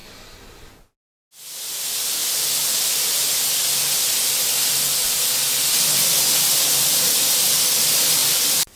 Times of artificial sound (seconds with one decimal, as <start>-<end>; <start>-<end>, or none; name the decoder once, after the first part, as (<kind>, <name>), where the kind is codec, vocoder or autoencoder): 8.2-8.8 (vocoder, BigVGAN v2)